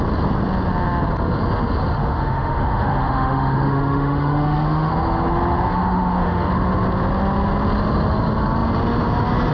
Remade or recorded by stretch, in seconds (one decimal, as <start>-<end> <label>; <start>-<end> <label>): 0.0-2.0 recorded; 2.0-4.9 remade; 4.9-5.7 recorded; 5.7-6.5 remade; 6.5-9.5 recorded

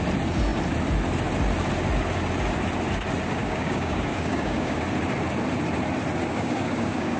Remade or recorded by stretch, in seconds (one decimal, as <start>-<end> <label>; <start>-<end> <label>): 0.0-3.4 recorded; 3.4-4.8 remade; 4.8-6.3 recorded; 6.3-7.2 remade

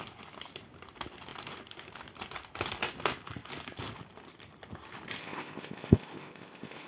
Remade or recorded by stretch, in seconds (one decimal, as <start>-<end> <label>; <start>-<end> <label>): 0.0-5.2 recorded; 5.2-6.9 remade